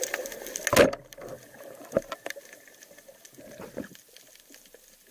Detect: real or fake real